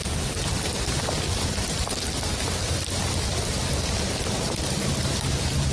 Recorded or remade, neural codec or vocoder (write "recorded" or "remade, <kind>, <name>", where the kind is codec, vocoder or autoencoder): remade, vocoder, BigVGAN v2